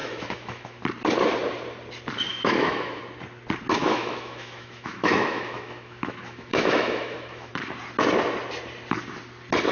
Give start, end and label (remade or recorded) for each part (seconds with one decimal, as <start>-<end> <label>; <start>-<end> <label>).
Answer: 0.0-0.8 remade; 0.8-2.3 recorded; 2.3-3.0 remade; 3.0-3.8 recorded; 3.8-7.5 remade; 7.5-9.7 recorded